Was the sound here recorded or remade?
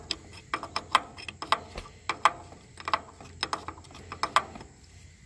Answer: recorded